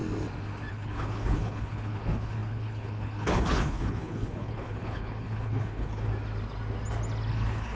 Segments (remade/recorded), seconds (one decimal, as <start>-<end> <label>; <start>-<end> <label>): 0.0-0.7 recorded; 0.7-6.1 remade; 6.1-7.3 recorded; 7.3-7.8 remade